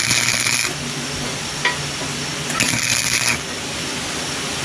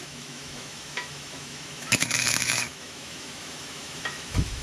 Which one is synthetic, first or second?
second